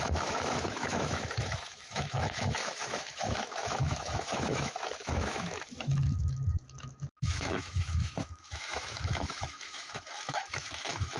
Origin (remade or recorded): remade